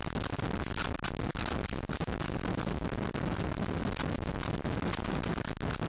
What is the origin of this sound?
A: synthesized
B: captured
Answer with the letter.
B